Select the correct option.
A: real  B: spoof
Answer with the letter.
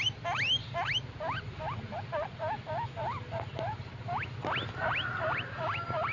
A